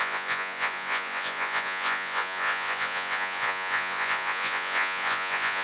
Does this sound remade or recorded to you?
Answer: remade